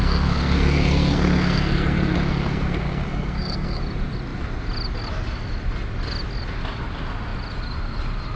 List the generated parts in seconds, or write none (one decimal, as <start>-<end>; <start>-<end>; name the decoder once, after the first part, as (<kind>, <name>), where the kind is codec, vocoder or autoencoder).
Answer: 0.0-3.8 (codec, SNAC)